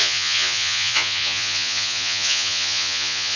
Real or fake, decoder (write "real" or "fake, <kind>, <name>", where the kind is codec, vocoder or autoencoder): fake, vocoder, Vocos